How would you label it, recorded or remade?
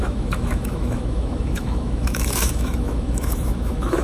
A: remade